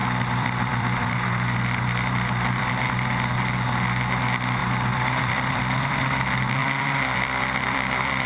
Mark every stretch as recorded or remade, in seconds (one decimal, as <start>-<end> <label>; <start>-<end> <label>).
0.0-2.7 remade; 2.7-4.6 recorded; 4.6-5.6 remade; 5.6-6.6 recorded; 6.6-8.3 remade

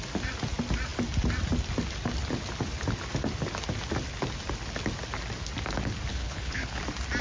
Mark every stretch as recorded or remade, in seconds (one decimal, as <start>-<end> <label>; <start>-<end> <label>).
0.0-6.1 recorded; 6.1-6.8 remade; 6.8-7.2 recorded

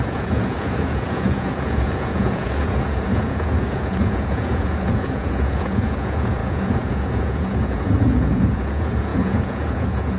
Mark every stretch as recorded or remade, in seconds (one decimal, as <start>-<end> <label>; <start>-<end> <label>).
0.0-10.2 remade

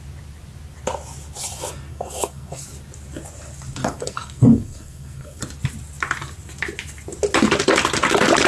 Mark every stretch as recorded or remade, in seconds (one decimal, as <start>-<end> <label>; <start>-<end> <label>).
0.0-1.9 recorded; 1.9-2.6 remade; 2.6-3.8 recorded; 3.8-5.4 remade; 5.4-8.5 recorded

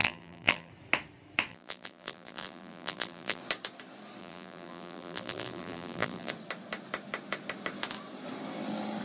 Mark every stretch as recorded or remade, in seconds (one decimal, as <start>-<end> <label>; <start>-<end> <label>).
0.0-0.7 remade; 0.7-1.5 recorded; 1.5-3.4 remade; 3.4-4.2 recorded; 4.2-6.3 remade; 6.3-9.0 recorded

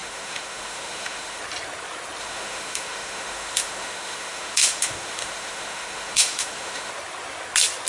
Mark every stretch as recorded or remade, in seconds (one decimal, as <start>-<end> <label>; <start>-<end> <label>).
0.0-1.4 remade; 1.4-2.2 recorded; 2.2-6.9 remade; 6.9-7.9 recorded

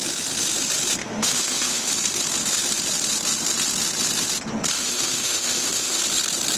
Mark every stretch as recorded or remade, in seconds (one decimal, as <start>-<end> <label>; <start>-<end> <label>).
0.0-1.0 recorded; 1.0-1.9 remade; 1.9-4.8 recorded; 4.8-6.0 remade; 6.0-6.6 recorded

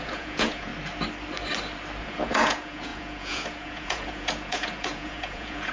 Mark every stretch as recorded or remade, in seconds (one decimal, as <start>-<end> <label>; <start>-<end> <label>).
0.0-0.7 remade; 0.7-2.0 recorded; 2.0-5.7 remade